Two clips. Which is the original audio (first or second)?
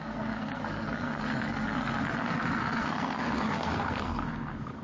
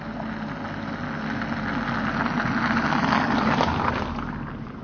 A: second